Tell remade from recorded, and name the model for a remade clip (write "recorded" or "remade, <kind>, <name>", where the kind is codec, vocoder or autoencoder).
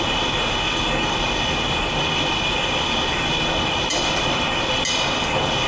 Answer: recorded